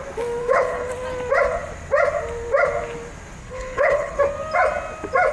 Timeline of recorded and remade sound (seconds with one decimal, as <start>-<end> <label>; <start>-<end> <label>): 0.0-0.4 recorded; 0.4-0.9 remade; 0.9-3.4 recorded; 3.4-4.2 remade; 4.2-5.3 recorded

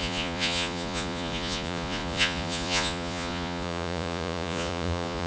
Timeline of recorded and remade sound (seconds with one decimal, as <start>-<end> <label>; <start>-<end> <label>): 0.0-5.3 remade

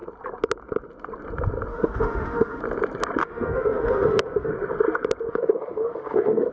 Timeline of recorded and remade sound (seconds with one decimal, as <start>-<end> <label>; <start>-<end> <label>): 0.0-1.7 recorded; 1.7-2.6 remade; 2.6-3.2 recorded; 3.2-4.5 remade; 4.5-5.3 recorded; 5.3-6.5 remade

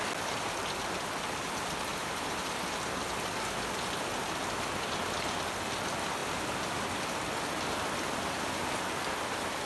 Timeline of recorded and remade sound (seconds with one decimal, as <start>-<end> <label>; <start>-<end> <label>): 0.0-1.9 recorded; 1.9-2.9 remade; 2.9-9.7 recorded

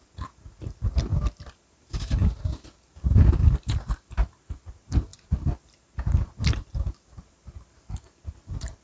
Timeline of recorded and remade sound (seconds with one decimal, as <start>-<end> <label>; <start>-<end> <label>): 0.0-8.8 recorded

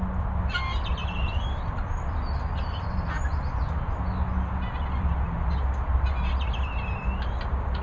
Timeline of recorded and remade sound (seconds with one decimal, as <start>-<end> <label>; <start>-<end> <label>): 0.0-1.0 recorded; 1.0-1.5 remade; 1.5-7.8 recorded